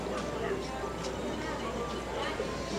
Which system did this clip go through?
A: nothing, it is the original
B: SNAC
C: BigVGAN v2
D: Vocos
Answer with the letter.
A